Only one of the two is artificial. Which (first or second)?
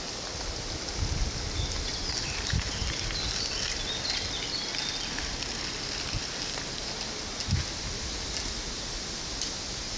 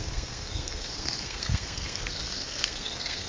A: second